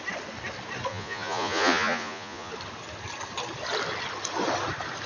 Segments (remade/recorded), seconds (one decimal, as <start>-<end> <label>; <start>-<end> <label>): 0.0-0.9 recorded; 0.9-2.5 remade; 2.5-5.1 recorded